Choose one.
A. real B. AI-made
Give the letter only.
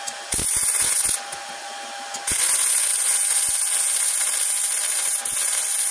A